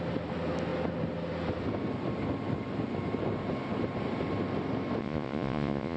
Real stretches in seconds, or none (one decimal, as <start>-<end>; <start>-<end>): 0.0-5.0